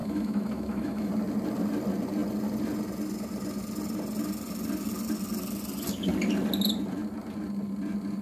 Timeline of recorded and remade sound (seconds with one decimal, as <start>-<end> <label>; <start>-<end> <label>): 0.0-1.1 remade; 1.1-8.2 recorded